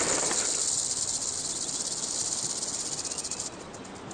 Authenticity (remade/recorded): recorded